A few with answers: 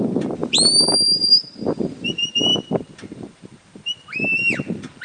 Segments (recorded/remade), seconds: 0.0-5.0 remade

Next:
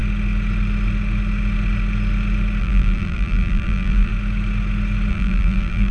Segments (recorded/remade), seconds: 0.0-2.6 recorded; 2.6-4.1 remade; 4.1-5.1 recorded; 5.1-5.9 remade

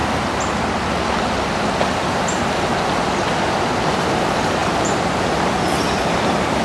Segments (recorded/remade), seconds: 0.0-4.0 recorded; 4.0-6.6 remade